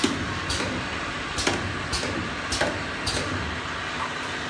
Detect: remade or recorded recorded